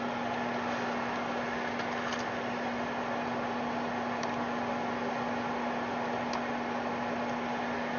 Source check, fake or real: real